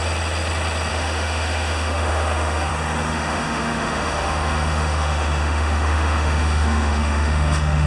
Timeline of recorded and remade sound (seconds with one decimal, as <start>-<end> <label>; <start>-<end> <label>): 0.0-0.9 recorded; 0.9-2.7 remade; 2.7-3.1 recorded; 3.1-7.9 remade